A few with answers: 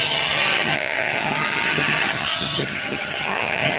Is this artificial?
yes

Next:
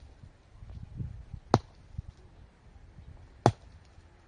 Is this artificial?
no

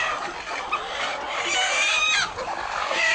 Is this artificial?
no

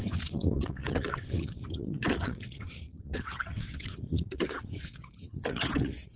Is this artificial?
yes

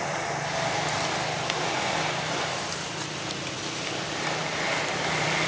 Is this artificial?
yes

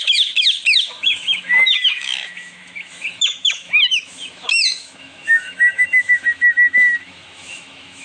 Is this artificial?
yes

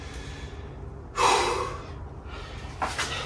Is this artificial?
no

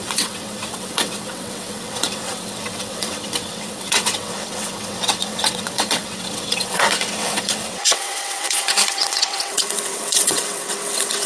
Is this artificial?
yes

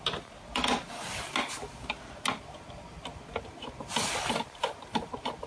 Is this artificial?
no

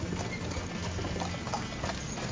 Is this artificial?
no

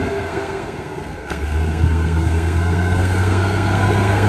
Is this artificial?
yes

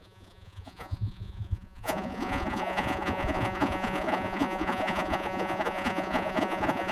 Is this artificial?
yes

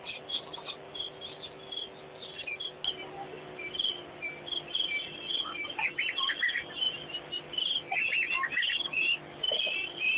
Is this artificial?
no